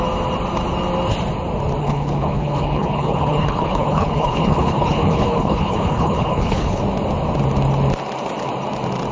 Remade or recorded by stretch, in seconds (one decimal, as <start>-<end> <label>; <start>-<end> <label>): 0.0-1.8 recorded; 1.8-6.8 remade; 6.8-9.1 recorded